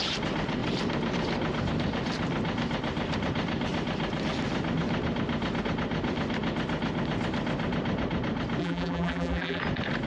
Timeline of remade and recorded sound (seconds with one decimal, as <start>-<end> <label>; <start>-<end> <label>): 0.0-8.6 recorded; 8.6-9.6 remade; 9.6-10.1 recorded